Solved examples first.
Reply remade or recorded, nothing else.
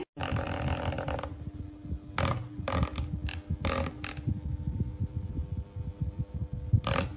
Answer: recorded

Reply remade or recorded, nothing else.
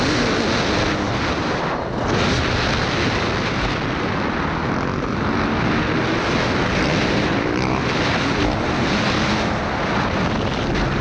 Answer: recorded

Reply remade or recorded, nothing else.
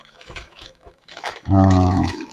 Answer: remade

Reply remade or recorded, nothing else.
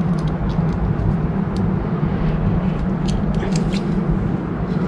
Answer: recorded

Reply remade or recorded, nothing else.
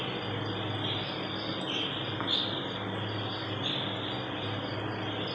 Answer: recorded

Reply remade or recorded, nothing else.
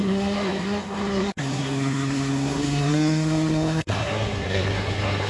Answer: remade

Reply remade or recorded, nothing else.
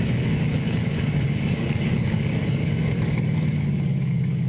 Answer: remade